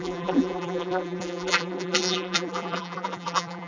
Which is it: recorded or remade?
remade